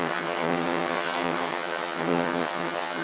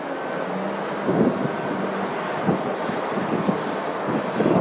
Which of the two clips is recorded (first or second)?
second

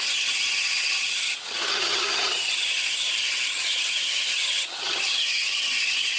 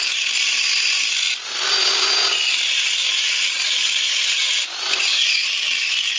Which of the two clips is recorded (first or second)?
second